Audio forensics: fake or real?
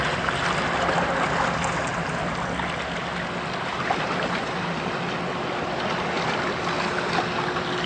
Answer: real